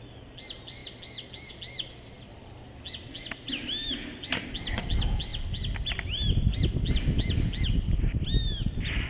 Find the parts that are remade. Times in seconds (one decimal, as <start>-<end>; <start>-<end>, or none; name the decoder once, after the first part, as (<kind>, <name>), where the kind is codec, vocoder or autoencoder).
none